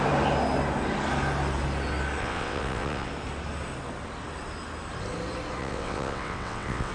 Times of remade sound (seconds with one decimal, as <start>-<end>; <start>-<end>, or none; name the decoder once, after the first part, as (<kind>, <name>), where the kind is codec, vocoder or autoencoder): 2.2-3.1 (vocoder, WaveNeXt); 5.6-6.9